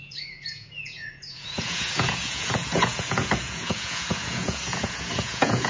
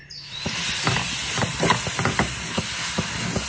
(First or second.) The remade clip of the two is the first